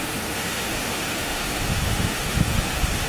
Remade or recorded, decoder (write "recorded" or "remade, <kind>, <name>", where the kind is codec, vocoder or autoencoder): remade, autoencoder, DAC-VAE